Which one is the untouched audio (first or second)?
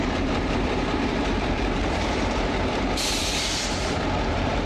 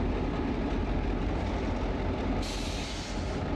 second